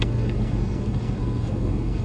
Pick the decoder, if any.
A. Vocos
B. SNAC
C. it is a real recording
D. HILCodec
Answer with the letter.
B